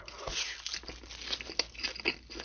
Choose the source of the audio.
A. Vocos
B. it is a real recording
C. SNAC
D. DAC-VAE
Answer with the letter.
B